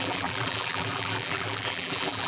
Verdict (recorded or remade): remade